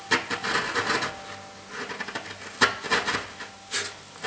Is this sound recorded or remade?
recorded